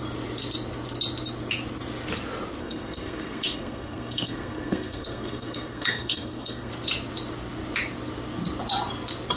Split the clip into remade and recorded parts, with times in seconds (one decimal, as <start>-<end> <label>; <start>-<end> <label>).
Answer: 0.0-2.6 recorded; 2.6-6.7 remade; 6.7-9.4 recorded

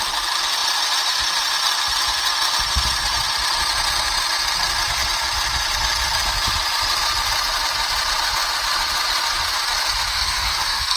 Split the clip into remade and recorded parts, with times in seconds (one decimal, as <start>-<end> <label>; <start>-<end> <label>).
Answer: 0.0-10.1 recorded; 10.1-11.0 remade